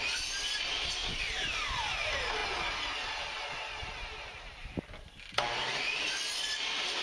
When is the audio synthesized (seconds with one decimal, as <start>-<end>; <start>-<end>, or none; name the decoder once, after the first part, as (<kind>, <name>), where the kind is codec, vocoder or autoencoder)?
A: none